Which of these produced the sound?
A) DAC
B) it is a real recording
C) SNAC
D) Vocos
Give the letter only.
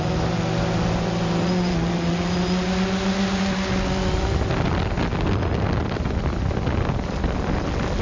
B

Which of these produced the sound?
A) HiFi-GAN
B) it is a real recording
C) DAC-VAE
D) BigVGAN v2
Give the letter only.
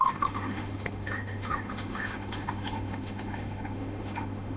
C